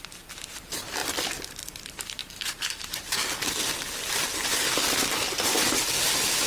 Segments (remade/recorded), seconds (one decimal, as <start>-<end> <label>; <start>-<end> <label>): 0.0-6.5 recorded